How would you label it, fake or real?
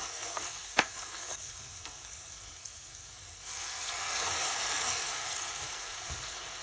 fake